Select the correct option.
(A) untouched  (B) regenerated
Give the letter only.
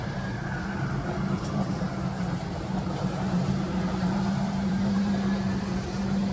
B